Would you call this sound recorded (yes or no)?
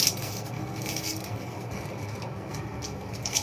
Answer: no